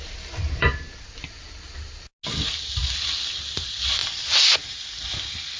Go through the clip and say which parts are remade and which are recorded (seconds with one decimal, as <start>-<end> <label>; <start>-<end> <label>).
0.0-5.6 recorded